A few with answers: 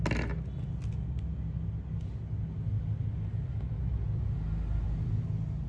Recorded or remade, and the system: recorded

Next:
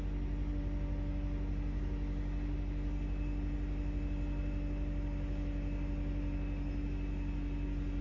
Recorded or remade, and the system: recorded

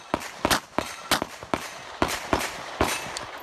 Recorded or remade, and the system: recorded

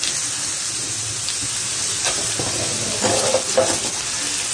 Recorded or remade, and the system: recorded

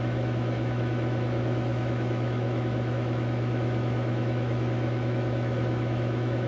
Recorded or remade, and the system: remade, autoencoder, DAC-VAE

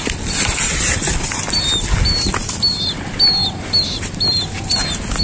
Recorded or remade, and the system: recorded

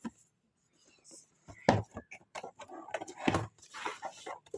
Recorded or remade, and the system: recorded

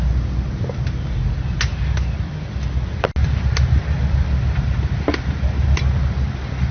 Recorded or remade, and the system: recorded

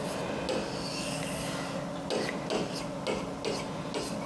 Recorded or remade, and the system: recorded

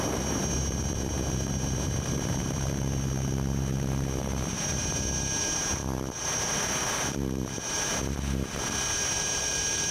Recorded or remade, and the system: remade, vocoder, BigVGAN v2